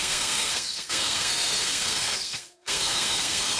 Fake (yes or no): yes